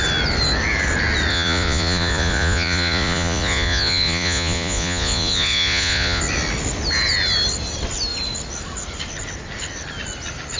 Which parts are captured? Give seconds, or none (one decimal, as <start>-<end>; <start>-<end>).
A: 0.0-1.3; 6.2-10.6